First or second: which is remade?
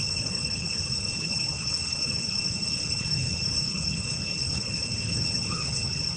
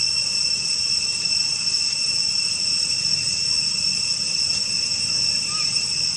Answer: first